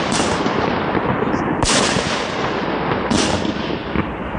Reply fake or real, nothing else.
real